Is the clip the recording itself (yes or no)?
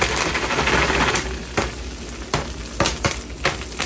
yes